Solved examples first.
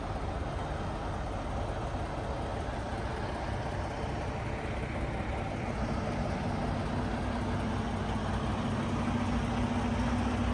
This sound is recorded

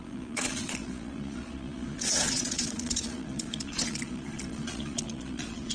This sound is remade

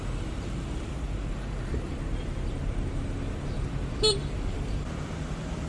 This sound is remade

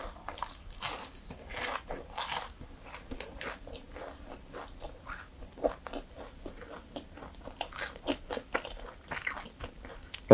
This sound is recorded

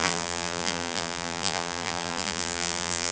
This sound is remade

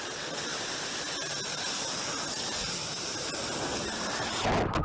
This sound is recorded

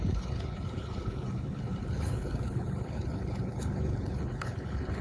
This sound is remade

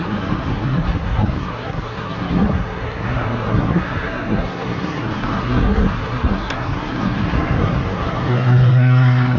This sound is remade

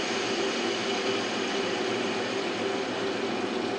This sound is recorded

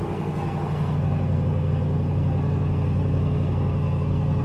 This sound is remade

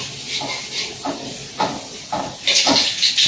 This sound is recorded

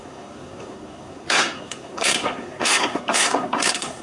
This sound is remade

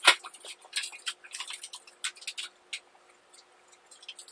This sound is recorded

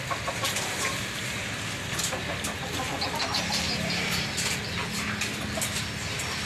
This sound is recorded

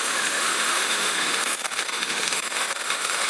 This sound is remade